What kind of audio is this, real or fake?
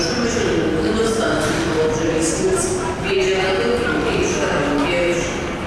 real